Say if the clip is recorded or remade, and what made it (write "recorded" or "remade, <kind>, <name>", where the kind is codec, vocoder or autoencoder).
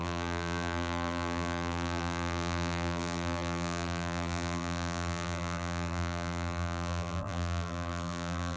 remade, vocoder, BigVGAN v2